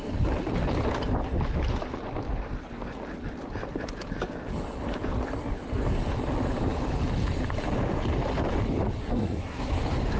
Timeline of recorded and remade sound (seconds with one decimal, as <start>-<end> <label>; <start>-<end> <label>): 0.0-9.0 recorded; 9.0-9.7 remade; 9.7-10.2 recorded